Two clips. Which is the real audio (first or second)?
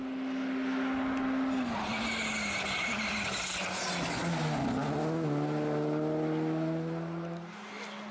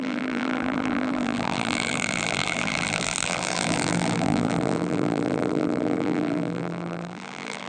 first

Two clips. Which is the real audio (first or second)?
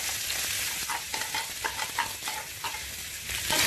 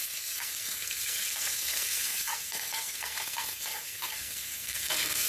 first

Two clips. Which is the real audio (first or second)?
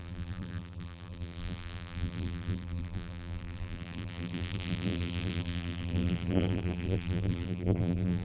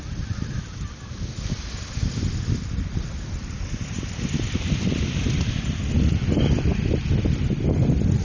second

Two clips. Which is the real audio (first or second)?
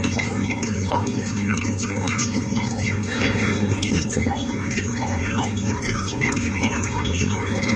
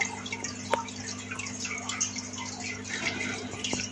second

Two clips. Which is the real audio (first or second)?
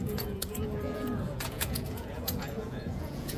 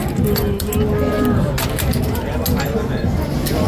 second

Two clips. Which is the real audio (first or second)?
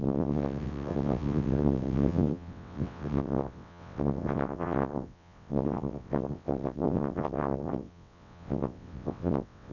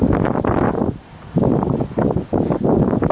second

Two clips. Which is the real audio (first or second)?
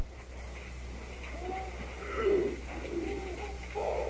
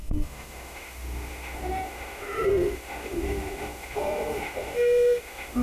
first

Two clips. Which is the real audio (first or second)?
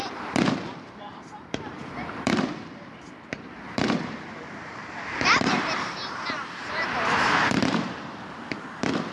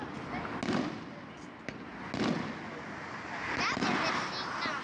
second